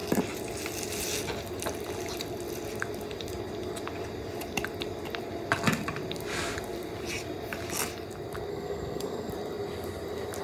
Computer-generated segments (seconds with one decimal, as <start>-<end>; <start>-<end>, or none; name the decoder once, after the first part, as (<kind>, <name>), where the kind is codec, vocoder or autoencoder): 8.5-9.3 (codec, SNAC)